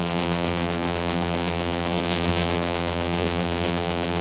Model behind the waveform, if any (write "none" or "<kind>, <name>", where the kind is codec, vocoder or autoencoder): vocoder, BigVGAN v2